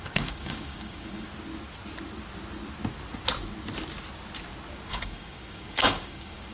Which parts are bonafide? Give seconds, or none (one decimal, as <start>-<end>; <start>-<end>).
1.3-4.9